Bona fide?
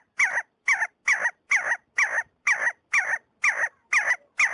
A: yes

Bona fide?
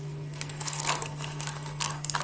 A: no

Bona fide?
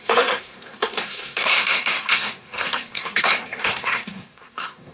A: no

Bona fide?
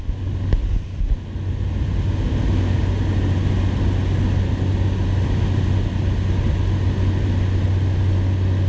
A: yes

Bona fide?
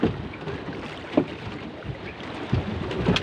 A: yes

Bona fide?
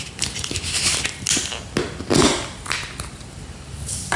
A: yes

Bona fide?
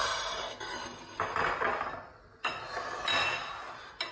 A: yes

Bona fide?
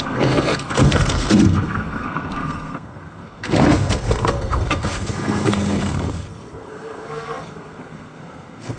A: no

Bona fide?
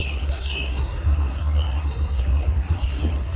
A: no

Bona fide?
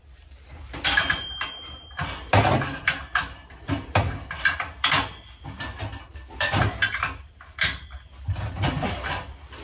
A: yes